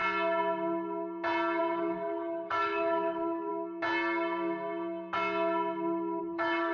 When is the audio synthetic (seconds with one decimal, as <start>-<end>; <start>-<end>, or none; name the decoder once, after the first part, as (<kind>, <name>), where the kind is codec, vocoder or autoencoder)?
1.6-3.5 (codec, DAC); 6.2-6.7

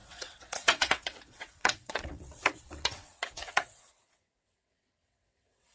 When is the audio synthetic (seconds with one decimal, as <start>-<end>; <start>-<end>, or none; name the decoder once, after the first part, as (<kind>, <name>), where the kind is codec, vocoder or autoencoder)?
0.0-5.7 (vocoder, WaveNeXt)

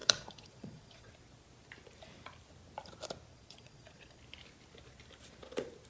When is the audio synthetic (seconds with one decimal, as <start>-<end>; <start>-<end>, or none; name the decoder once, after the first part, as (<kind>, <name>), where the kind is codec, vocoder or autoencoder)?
0.0-1.1 (vocoder, Vocos); 3.3-4.2

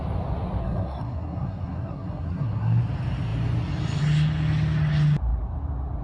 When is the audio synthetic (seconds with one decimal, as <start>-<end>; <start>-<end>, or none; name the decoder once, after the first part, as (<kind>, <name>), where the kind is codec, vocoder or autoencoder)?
0.6-2.8 (codec, SNAC)